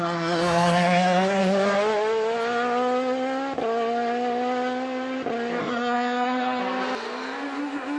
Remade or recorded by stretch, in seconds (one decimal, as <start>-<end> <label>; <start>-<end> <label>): 0.0-1.4 remade; 1.4-5.6 recorded; 5.6-6.6 remade; 6.6-8.0 recorded